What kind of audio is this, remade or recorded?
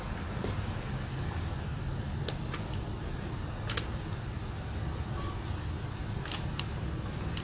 recorded